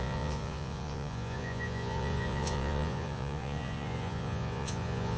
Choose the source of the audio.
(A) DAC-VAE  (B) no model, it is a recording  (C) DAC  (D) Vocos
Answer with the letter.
D